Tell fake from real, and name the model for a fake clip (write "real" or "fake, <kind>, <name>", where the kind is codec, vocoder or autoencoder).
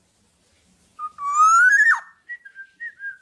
real